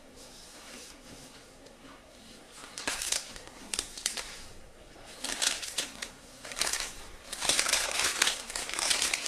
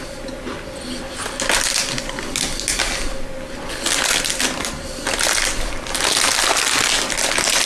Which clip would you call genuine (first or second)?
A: second